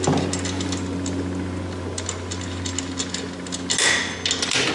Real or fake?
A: real